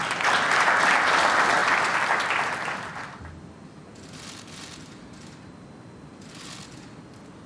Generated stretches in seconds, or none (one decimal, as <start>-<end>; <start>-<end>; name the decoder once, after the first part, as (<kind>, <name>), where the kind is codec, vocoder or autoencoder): none